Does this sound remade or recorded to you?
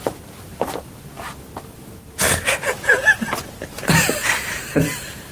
recorded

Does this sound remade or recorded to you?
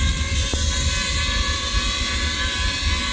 recorded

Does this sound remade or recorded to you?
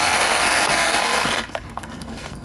remade